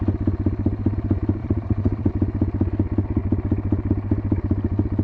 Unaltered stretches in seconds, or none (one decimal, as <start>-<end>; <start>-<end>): 0.0-1.4; 2.1-5.0